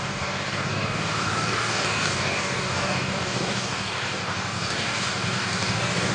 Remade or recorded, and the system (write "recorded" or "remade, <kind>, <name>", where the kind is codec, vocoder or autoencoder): remade, codec, DAC